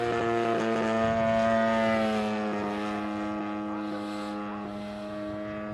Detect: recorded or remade recorded